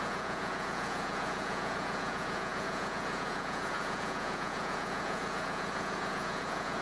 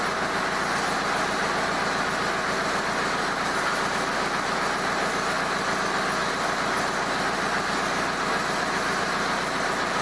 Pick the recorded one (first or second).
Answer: second